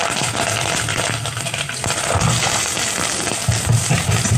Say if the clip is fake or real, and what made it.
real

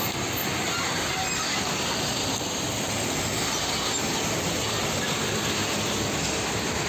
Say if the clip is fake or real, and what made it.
real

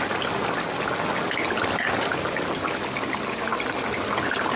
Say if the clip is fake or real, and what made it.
real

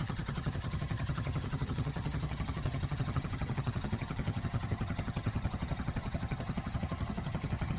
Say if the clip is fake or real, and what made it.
fake, vocoder, HiFi-GAN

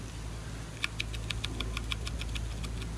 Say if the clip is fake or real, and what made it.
real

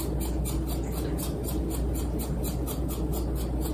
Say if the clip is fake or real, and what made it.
real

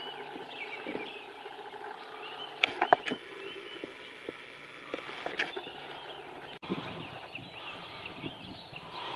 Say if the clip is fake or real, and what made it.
real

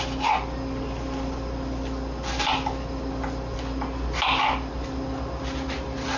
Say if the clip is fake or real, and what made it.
real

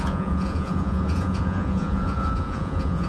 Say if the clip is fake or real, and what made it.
fake, vocoder, Vocos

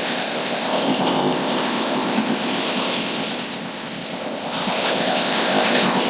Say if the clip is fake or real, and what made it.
fake, codec, ZipCodec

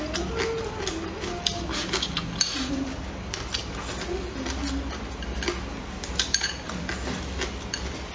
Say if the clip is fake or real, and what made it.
real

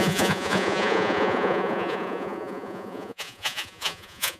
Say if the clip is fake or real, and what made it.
fake, vocoder, Vocos